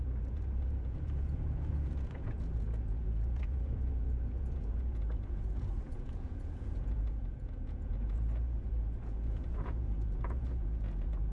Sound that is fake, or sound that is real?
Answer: fake